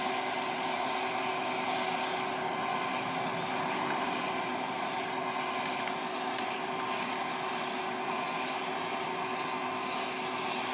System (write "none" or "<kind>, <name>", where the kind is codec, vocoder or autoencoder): none